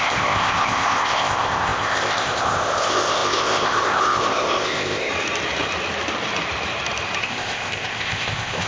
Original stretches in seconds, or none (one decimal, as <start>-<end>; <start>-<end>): 5.1-7.2

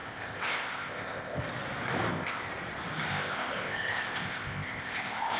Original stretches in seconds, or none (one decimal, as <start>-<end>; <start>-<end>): 1.4-2.1; 2.5-3.1